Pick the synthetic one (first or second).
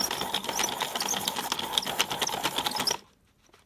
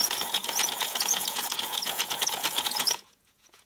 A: second